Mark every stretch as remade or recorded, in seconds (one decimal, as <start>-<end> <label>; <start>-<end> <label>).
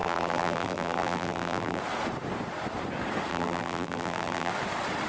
0.0-1.8 remade; 1.8-3.3 recorded; 3.3-4.5 remade; 4.5-5.1 recorded